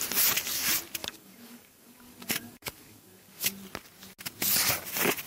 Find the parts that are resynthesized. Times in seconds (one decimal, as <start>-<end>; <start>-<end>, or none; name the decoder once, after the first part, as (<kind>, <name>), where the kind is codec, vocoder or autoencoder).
1.0-3.5 (codec, DAC)